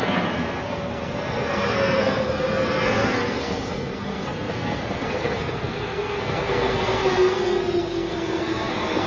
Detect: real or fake fake